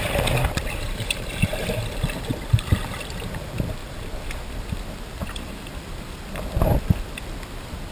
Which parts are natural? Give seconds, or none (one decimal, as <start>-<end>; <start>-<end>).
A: 3.8-4.5